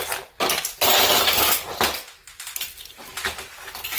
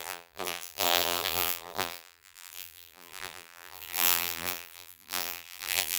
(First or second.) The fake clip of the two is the second